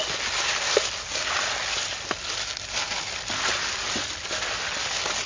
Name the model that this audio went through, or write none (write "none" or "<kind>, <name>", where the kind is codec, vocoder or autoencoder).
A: none